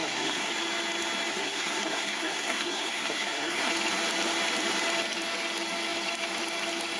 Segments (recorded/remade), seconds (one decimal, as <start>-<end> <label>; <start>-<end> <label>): 0.0-0.5 remade; 0.5-1.3 recorded; 1.3-3.7 remade; 3.7-7.0 recorded